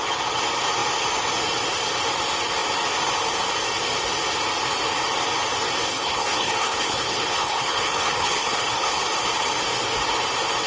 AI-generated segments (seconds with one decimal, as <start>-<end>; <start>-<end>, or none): 5.9-9.0